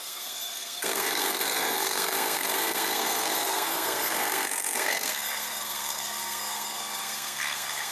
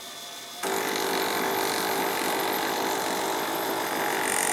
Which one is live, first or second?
second